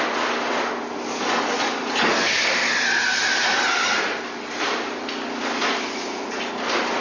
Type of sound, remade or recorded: recorded